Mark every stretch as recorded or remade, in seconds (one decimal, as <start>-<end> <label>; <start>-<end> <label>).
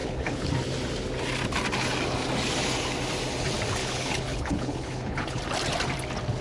0.0-0.5 remade; 0.5-3.8 recorded; 3.8-5.4 remade; 5.4-6.4 recorded